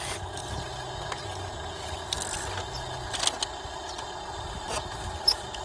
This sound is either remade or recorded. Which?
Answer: recorded